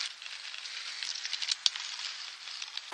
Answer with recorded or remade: recorded